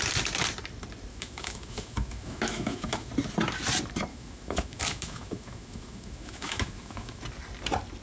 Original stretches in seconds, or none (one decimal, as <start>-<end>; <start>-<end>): 0.0-1.1; 3.1-4.1; 7.2-8.0